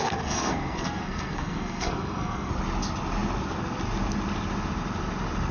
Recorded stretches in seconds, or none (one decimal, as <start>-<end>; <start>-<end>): 2.5-5.5